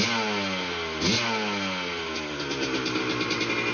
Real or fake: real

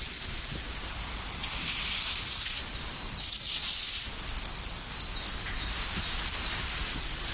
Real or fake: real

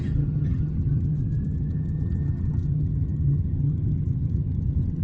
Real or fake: fake